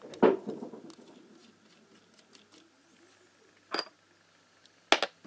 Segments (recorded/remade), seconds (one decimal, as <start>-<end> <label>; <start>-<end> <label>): 0.0-5.3 recorded